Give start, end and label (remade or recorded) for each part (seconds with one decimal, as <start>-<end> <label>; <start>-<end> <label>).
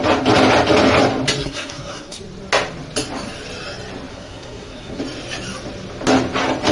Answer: 0.0-1.4 recorded; 1.4-2.2 remade; 2.2-4.1 recorded; 4.1-5.0 remade; 5.0-6.7 recorded